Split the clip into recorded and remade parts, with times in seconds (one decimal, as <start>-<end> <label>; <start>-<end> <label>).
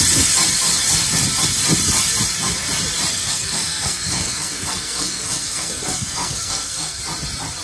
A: 0.0-3.1 recorded; 3.1-7.0 remade; 7.0-7.6 recorded